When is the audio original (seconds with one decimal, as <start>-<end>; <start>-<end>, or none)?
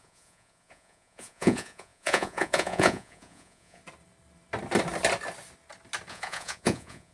3.8-6.1